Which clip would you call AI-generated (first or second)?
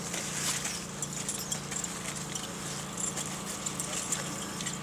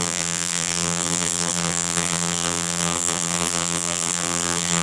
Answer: second